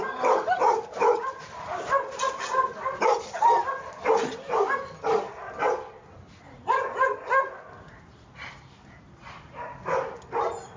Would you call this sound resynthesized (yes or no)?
no